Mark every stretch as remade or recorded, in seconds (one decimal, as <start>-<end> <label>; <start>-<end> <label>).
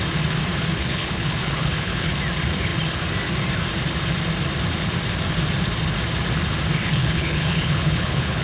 0.0-0.8 recorded; 0.8-2.1 remade; 2.1-6.8 recorded; 6.8-8.4 remade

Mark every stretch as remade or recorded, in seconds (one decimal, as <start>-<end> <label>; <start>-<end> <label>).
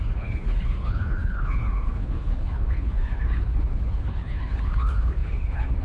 0.0-5.8 remade